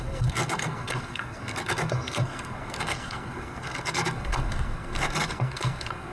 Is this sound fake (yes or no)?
yes